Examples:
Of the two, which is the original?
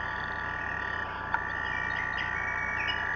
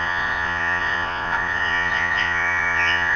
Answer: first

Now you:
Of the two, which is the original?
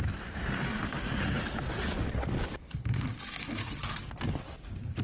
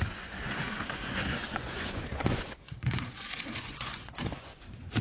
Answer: first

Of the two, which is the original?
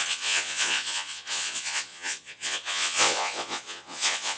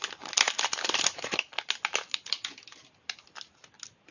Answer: second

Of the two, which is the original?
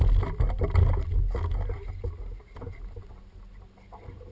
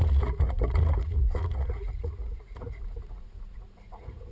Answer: first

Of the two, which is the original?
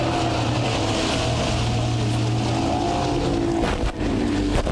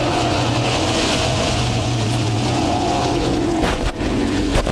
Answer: first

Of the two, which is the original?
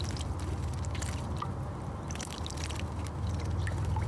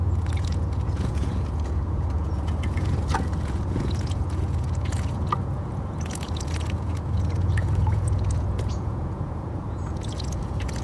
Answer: first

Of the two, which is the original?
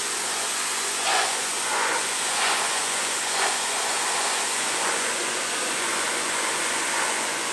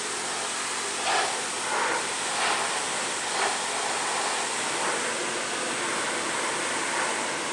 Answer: second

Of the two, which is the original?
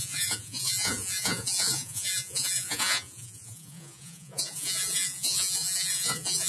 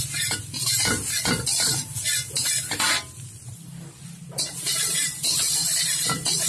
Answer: second